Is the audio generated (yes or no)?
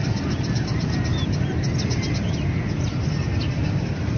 no